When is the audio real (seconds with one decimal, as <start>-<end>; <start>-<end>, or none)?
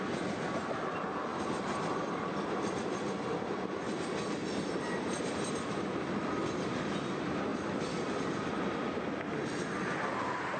0.0-1.3; 3.9-4.4; 5.0-7.5; 8.5-10.6